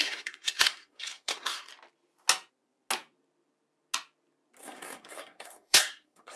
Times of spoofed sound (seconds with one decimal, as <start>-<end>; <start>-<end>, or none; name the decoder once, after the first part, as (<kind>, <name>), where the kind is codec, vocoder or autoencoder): 0.0-1.7 (codec, SNAC); 4.6-6.4